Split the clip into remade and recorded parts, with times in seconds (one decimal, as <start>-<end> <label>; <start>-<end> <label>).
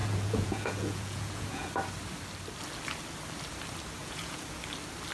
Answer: 0.0-1.7 remade; 1.7-4.0 recorded; 4.0-4.6 remade; 4.6-5.1 recorded